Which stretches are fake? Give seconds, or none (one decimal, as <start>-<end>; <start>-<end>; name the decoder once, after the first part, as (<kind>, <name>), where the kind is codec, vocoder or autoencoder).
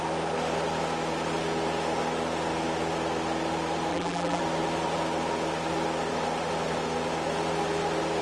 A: 3.9-4.4 (vocoder, BigVGAN v2)